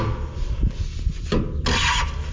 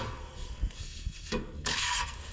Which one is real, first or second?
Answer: first